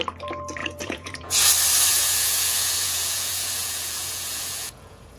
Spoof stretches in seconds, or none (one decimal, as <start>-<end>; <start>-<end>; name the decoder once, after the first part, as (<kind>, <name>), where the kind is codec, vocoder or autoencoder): 0.6-1.5 (vocoder, Vocos); 1.9-5.2